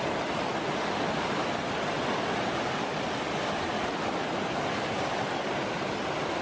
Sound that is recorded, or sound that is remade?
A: recorded